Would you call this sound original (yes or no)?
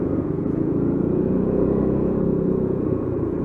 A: no